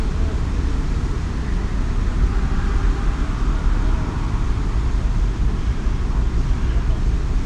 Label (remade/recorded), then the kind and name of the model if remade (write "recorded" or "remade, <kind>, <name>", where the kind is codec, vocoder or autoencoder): recorded